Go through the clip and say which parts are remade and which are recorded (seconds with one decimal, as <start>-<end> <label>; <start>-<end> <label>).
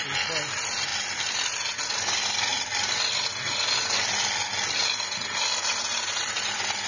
0.0-2.5 recorded; 2.5-3.5 remade; 3.5-6.9 recorded